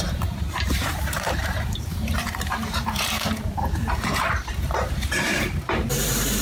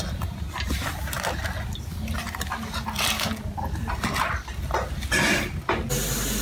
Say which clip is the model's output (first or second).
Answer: first